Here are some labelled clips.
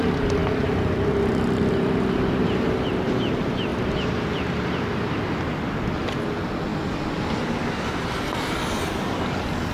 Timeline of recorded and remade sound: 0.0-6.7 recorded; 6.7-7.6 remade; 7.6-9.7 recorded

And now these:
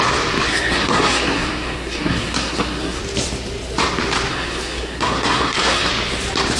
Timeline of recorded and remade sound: 0.0-0.5 recorded; 0.5-3.0 remade; 3.0-4.3 recorded; 4.3-5.9 remade; 5.9-6.6 recorded

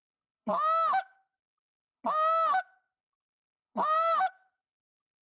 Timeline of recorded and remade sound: 0.0-0.5 remade; 0.5-1.4 recorded; 1.4-2.0 remade; 2.0-2.6 recorded; 2.6-5.2 remade

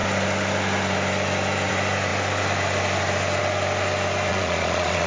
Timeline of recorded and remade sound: 0.0-4.3 recorded; 4.3-5.1 remade